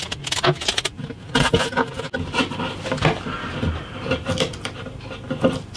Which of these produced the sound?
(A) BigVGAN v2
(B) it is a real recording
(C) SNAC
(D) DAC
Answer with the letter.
B